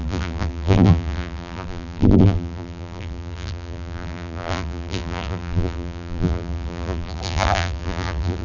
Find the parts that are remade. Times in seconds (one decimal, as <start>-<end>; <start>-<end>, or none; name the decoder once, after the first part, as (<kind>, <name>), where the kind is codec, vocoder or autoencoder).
0.0-8.4 (vocoder, BigVGAN v2)